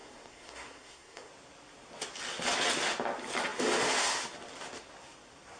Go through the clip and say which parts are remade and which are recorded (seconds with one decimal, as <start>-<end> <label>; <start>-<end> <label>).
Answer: 0.0-1.3 remade; 1.3-5.6 recorded